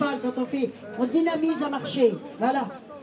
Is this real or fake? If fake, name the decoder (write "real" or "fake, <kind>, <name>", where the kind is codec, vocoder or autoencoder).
real